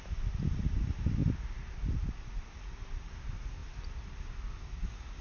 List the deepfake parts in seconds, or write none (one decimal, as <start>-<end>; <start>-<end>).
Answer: none